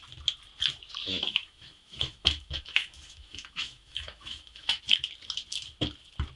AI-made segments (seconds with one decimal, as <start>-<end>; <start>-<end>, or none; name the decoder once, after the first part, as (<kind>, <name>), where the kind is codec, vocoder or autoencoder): 1.0-4.8 (autoencoder, DAC-VAE)

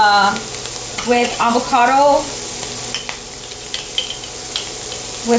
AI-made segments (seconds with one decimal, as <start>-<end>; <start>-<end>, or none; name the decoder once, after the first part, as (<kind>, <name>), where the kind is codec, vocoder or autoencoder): 0.9-1.8 (vocoder, WaveNeXt)

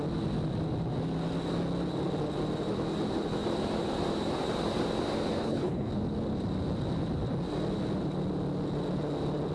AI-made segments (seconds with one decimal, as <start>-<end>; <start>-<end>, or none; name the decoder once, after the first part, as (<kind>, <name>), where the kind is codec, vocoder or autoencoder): 5.4-5.9 (codec, HILCodec)

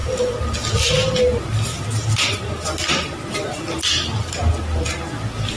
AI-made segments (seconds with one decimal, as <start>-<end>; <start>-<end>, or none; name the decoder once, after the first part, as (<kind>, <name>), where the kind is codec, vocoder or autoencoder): none

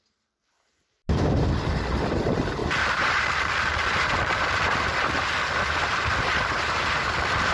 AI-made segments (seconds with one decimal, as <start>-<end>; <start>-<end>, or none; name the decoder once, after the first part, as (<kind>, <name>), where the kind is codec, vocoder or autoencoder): none

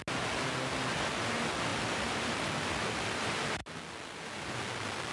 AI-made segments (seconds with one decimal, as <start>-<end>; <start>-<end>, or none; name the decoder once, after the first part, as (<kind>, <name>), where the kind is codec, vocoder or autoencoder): 1.7-2.5 (vocoder, BigVGAN v2)

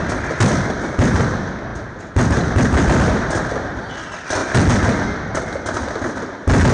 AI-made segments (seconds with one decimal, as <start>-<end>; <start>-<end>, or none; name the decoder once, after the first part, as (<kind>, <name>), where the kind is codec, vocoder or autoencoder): 4.4-6.3 (vocoder, BigVGAN v2)

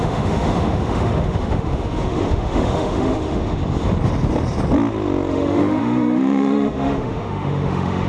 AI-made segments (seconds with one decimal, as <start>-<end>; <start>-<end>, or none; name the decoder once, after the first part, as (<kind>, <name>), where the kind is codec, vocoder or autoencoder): 0.0-3.6 (autoencoder, DAC-VAE); 5.3-8.1